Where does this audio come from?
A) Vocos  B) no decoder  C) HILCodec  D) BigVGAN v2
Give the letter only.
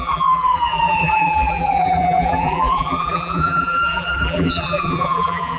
D